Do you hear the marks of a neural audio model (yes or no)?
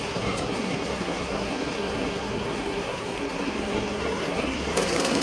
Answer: yes